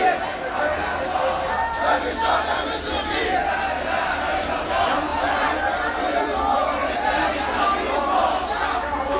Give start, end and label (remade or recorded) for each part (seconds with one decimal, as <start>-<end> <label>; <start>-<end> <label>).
0.0-3.4 remade; 3.4-4.0 recorded; 4.0-9.2 remade